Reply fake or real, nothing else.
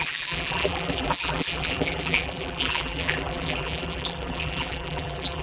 fake